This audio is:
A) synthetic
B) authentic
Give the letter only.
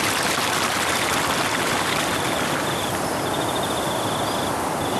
B